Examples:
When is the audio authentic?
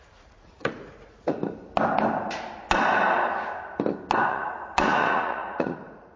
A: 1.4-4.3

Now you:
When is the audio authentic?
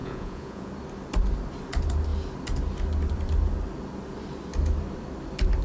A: 0.7-5.6